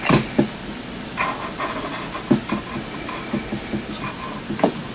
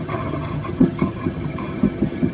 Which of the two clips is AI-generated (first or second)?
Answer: second